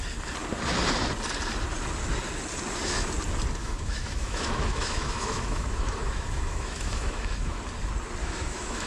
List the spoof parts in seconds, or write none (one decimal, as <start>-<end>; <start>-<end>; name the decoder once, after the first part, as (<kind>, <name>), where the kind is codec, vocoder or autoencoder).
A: 3.6-7.6 (autoencoder, DAC-VAE); 8.2-8.9